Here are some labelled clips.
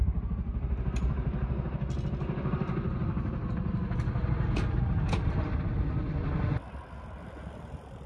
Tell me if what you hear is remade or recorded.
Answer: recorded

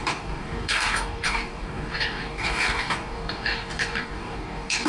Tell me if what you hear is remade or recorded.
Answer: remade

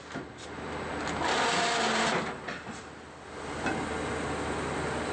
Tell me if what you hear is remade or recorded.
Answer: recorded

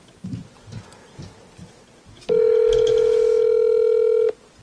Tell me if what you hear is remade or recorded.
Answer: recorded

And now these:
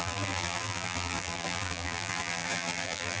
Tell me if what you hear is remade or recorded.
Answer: remade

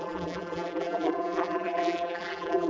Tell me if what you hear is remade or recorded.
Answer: remade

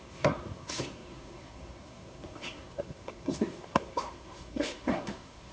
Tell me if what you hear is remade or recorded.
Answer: remade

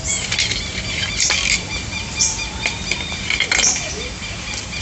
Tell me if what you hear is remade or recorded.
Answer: recorded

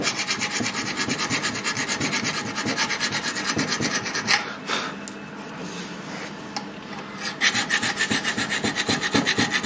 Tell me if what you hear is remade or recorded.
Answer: recorded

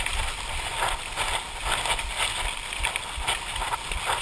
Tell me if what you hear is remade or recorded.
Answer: recorded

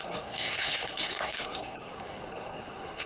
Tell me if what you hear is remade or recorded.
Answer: remade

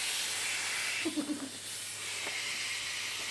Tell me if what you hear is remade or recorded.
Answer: recorded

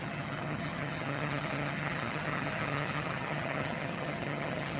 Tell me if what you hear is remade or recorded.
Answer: remade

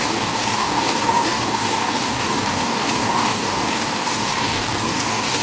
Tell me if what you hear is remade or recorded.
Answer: remade